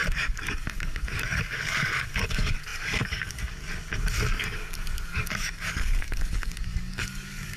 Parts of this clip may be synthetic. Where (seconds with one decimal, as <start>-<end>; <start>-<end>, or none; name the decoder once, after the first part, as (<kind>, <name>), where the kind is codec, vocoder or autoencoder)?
0.0-3.7 (codec, DAC); 4.3-7.6

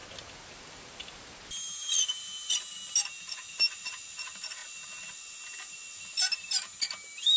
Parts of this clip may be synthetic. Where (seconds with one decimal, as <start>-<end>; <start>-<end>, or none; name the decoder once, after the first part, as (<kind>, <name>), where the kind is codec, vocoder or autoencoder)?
none

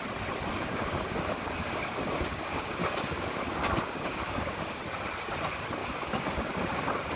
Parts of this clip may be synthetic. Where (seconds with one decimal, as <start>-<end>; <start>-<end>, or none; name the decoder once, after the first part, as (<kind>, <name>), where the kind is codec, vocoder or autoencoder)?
0.5-4.8 (codec, DAC); 5.8-7.2